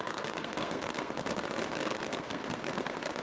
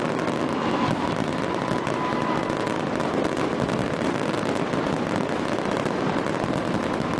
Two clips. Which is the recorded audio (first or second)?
second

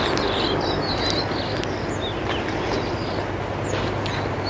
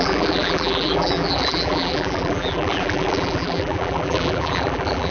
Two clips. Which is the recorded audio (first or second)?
first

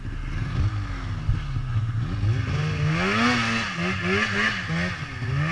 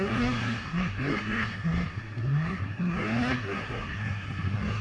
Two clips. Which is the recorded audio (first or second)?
first